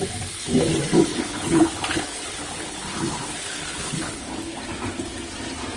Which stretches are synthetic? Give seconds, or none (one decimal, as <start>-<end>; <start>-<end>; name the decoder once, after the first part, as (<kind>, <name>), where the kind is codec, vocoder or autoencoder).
1.1-4.6 (codec, HILCodec)